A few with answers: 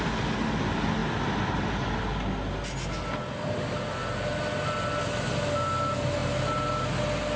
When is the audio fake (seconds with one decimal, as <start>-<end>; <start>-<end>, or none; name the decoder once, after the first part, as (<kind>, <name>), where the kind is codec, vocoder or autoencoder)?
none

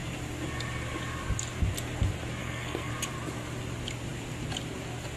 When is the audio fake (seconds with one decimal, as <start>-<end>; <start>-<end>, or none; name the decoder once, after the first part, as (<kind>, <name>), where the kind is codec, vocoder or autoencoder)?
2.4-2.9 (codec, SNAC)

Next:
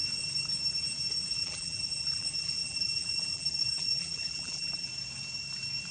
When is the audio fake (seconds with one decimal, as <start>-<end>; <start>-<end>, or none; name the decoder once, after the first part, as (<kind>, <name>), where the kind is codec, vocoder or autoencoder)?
1.3-4.9 (vocoder, BigVGAN v2)

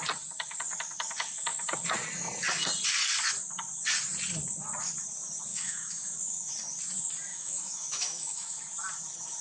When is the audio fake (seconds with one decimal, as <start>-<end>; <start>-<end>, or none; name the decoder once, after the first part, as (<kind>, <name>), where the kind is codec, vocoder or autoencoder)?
5.5-6.5 (autoencoder, DAC-VAE); 7.3-8.6

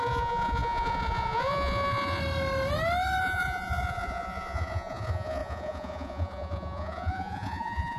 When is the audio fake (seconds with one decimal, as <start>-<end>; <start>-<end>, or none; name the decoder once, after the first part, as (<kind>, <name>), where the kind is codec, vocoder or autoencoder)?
0.0-2.2 (vocoder, Vocos); 3.2-8.0